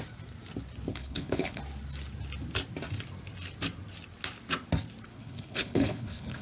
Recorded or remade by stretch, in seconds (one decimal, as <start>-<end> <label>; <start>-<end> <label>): 0.0-0.9 recorded; 0.9-1.6 remade; 1.6-5.1 recorded; 5.1-6.4 remade